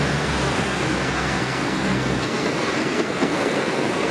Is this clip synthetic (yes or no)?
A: yes